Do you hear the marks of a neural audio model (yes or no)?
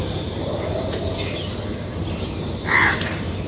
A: no